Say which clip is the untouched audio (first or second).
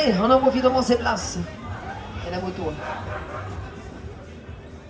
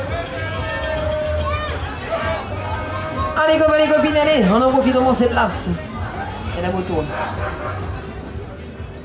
second